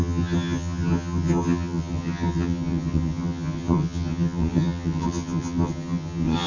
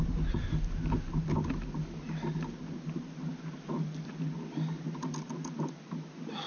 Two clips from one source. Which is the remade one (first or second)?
first